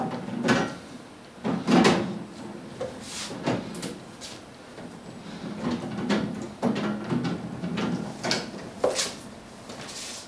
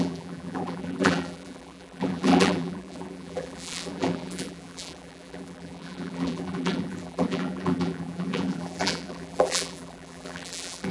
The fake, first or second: second